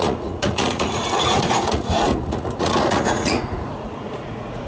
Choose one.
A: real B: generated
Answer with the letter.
B